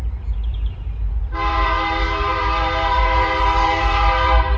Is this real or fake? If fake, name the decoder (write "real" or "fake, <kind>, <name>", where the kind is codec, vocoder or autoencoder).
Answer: fake, vocoder, BigVGAN v2